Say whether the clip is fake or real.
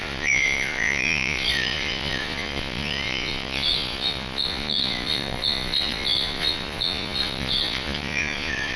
fake